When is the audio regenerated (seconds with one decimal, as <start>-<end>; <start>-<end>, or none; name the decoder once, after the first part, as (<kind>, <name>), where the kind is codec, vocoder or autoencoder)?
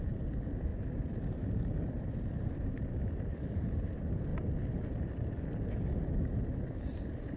0.0-4.3 (vocoder, BigVGAN v2); 6.0-7.4